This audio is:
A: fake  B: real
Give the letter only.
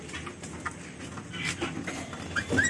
B